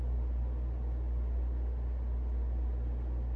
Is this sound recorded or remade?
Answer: recorded